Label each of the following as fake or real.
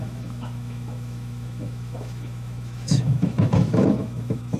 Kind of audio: fake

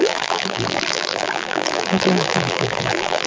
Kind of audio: fake